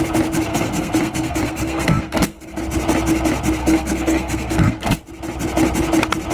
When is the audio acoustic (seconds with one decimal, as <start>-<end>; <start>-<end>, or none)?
0.0-0.5; 2.6-3.6; 5.0-6.3